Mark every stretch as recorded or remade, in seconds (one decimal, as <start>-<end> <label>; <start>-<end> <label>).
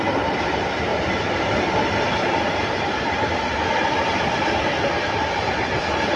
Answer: 0.0-6.2 recorded